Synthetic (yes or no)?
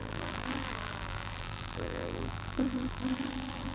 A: yes